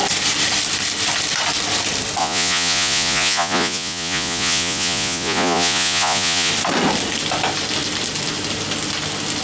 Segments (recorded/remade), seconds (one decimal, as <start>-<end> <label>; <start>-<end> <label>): 0.0-2.2 recorded; 2.2-6.5 remade; 6.5-9.4 recorded